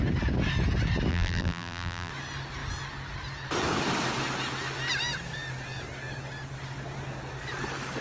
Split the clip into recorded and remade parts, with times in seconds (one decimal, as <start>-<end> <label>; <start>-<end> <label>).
0.0-1.1 recorded; 1.1-2.1 remade; 2.1-8.0 recorded